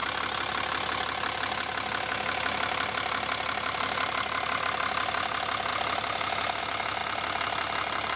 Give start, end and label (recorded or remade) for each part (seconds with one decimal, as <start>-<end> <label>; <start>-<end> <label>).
0.0-8.2 recorded